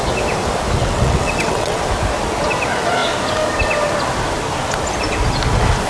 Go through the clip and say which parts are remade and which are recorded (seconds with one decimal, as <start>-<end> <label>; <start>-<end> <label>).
0.0-0.8 recorded; 0.8-1.8 remade; 1.8-5.9 recorded